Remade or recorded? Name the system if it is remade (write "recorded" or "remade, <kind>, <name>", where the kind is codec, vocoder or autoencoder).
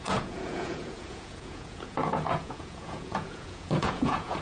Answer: remade, vocoder, Vocos